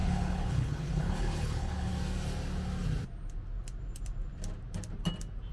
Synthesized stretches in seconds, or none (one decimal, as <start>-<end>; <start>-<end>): 0.0-1.9